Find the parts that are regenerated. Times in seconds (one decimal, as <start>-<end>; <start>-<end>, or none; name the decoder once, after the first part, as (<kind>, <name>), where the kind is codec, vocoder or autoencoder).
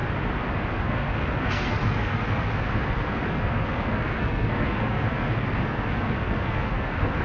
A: 0.7-7.2 (codec, SNAC)